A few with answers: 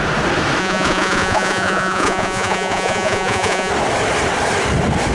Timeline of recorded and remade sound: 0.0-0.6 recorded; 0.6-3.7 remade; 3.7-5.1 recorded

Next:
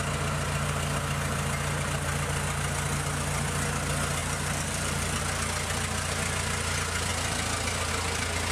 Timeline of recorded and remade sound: 0.0-4.2 recorded; 4.2-5.2 remade; 5.2-8.5 recorded

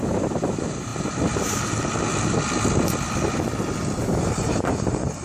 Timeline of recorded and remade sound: 0.0-0.9 remade; 0.9-4.0 recorded; 4.0-5.2 remade